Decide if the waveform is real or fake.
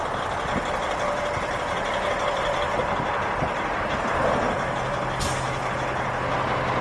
real